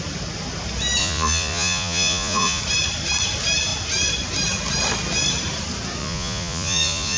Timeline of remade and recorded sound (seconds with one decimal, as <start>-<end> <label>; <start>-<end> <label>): 0.0-1.0 recorded; 1.0-2.6 remade; 2.6-6.0 recorded; 6.0-7.2 remade